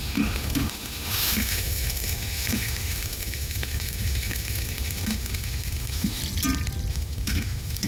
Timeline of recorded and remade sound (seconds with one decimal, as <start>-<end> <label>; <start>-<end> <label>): 0.0-6.2 remade; 6.2-6.9 recorded; 6.9-7.9 remade